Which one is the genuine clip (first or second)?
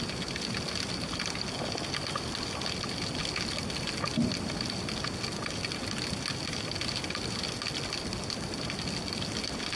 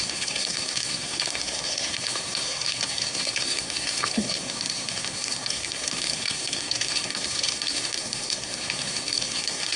first